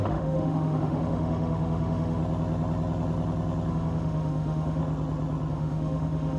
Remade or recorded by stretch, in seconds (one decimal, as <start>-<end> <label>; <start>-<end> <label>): 0.0-2.2 remade; 2.2-3.7 recorded; 3.7-4.8 remade; 4.8-5.5 recorded; 5.5-6.4 remade